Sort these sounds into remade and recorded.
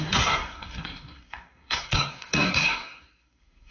remade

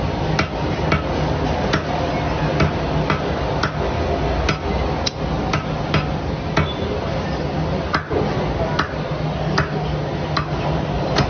recorded